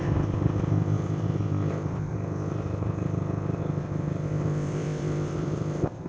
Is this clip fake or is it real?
fake